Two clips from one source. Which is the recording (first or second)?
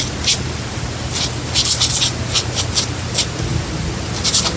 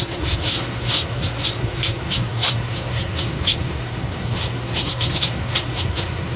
first